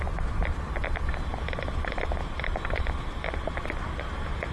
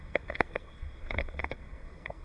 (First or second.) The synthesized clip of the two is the second